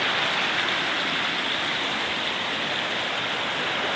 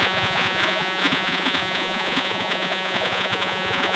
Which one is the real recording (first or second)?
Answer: first